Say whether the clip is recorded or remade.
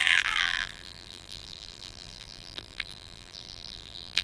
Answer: remade